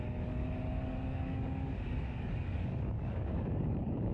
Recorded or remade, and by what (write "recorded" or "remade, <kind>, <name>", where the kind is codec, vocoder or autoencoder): remade, codec, DAC